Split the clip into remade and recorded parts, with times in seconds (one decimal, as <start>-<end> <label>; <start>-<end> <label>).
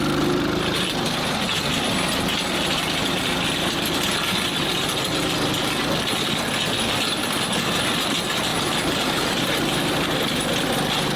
0.0-8.5 recorded; 8.5-10.5 remade; 10.5-11.2 recorded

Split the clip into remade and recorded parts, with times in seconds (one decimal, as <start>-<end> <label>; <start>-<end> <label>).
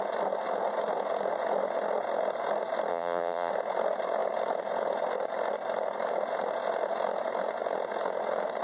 0.0-2.9 recorded; 2.9-3.5 remade; 3.5-8.6 recorded